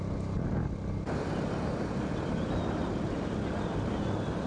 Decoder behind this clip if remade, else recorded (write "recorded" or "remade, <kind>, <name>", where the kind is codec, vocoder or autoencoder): recorded